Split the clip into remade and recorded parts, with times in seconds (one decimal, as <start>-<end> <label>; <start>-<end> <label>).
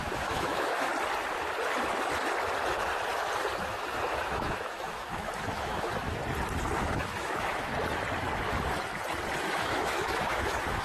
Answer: 0.0-0.9 remade; 0.9-3.6 recorded; 3.6-6.2 remade; 6.2-6.8 recorded; 6.8-7.7 remade; 7.7-9.4 recorded; 9.4-10.8 remade